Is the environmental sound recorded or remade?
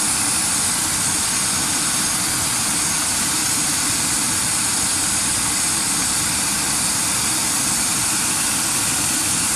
recorded